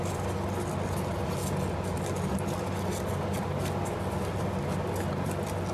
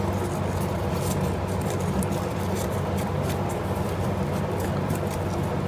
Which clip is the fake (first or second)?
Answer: second